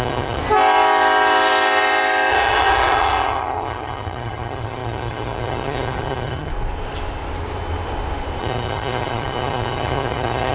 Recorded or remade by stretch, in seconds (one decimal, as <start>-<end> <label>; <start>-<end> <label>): 0.0-0.4 remade; 0.4-2.3 recorded; 2.3-6.5 remade; 6.5-8.4 recorded; 8.4-10.5 remade